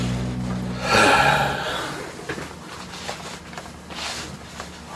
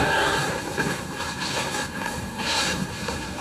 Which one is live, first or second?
first